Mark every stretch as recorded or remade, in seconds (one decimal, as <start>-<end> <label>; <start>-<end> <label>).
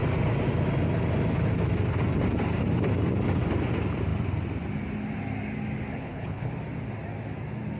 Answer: 0.0-5.9 recorded; 5.9-6.5 remade; 6.5-7.8 recorded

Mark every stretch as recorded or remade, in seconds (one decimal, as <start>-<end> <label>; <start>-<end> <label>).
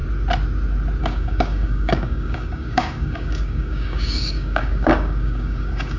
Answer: 0.0-1.0 recorded; 1.0-6.0 remade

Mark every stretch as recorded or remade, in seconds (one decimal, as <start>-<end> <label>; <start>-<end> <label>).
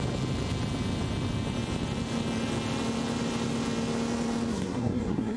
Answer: 0.0-4.5 recorded; 4.5-5.4 remade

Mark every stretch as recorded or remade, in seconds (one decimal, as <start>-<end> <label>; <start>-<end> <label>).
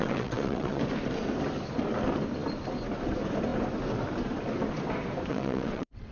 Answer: 0.0-0.8 remade; 0.8-5.3 recorded; 5.3-6.1 remade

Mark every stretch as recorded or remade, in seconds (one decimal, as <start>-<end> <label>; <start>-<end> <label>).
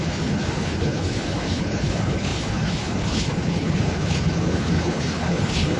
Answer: 0.0-5.8 remade